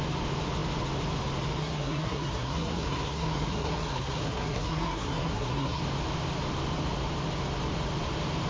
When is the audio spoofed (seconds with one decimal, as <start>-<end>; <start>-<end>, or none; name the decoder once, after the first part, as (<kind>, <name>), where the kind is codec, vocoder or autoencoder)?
1.6-5.8 (codec, SNAC)

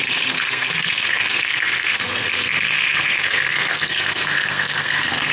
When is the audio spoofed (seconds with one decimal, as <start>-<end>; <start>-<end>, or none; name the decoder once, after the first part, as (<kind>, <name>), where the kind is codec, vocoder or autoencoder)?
0.0-5.3 (codec, SNAC)

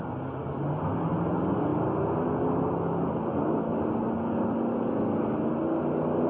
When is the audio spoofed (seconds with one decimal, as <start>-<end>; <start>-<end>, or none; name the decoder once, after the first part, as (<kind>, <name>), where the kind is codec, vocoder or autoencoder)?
none

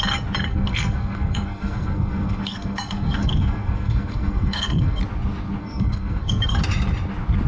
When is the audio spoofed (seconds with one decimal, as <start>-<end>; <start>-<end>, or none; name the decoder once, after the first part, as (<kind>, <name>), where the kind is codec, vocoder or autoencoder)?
0.5-5.0 (codec, SNAC); 5.6-6.6

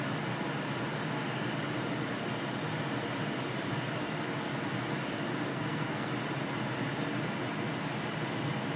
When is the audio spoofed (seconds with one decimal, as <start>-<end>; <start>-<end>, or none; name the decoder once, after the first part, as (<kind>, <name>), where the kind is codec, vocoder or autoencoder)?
5.5-6.1 (codec, SNAC)

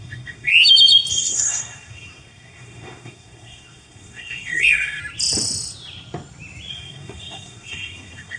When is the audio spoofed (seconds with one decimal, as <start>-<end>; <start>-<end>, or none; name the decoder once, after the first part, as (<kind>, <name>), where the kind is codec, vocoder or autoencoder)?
0.0-0.5 (codec, SNAC); 1.1-5.0; 6.7-8.4